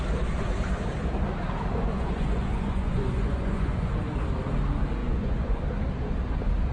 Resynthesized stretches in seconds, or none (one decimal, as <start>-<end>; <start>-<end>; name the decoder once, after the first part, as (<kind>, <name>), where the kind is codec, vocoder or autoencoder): 1.7-3.9 (vocoder, Vocos); 5.0-5.6